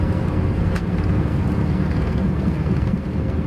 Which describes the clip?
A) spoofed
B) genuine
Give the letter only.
A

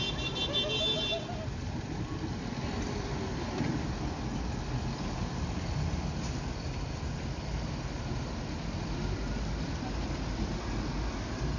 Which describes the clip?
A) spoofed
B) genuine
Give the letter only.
B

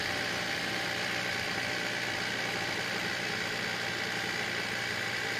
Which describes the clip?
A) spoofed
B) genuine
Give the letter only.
B